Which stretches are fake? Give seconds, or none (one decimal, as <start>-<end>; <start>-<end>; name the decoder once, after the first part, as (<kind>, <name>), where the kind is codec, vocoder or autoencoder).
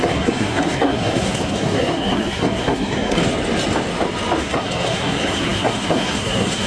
0.0-3.2 (codec, SNAC); 4.4-6.7